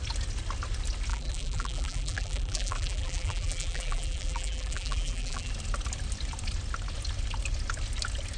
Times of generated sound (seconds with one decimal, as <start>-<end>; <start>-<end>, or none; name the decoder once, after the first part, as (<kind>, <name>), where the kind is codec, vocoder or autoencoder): 1.1-5.5 (vocoder, BigVGAN v2)